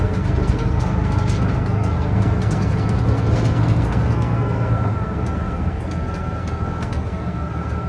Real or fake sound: fake